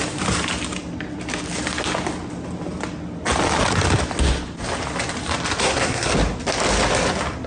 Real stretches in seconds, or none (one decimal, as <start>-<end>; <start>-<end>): 0.0-5.6; 6.1-7.5